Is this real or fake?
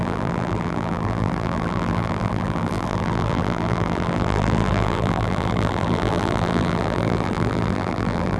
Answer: fake